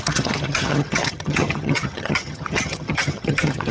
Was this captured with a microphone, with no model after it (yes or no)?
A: no